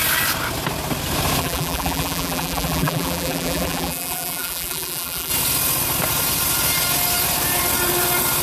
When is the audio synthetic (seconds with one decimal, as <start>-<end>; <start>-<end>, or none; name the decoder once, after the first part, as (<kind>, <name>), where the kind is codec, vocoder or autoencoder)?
1.4-5.3 (vocoder, BigVGAN v2)